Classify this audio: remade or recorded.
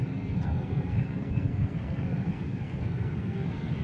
remade